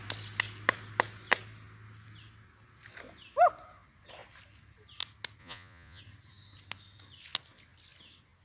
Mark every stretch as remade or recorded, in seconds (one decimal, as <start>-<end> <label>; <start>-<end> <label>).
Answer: 0.0-5.4 recorded; 5.4-6.0 remade; 6.0-8.4 recorded